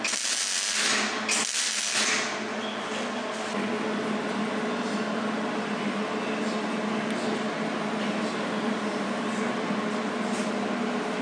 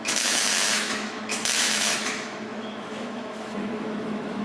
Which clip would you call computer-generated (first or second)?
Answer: second